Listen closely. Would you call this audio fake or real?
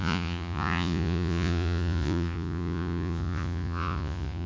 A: fake